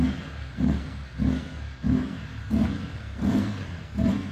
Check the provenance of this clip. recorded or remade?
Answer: remade